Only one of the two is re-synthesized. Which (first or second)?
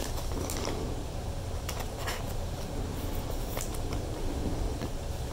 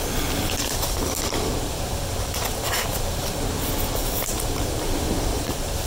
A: second